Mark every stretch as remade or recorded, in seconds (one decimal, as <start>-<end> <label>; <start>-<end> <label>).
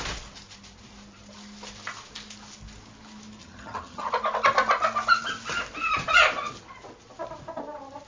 0.0-3.4 recorded; 3.4-4.1 remade; 4.1-8.1 recorded